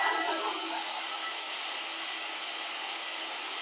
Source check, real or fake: fake